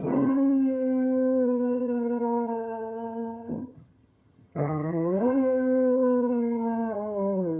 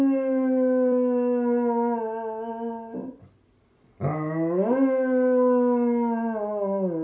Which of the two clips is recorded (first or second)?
second